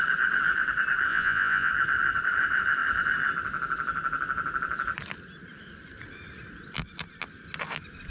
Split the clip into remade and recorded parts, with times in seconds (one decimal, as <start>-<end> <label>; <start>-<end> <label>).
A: 0.0-1.1 recorded; 1.1-1.7 remade; 1.7-8.1 recorded